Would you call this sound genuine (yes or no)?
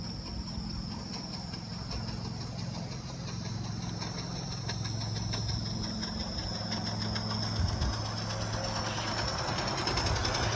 yes